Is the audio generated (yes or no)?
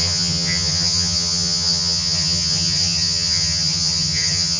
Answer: yes